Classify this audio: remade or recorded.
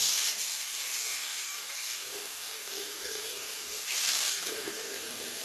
remade